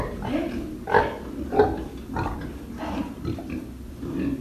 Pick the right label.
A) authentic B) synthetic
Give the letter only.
A